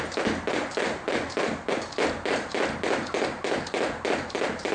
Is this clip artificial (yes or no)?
no